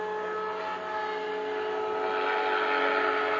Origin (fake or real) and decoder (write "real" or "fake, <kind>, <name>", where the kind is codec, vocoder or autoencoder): real